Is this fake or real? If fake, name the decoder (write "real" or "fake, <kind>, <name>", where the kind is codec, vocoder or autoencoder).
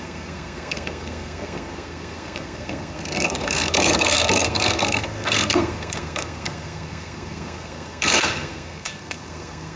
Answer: fake, codec, SNAC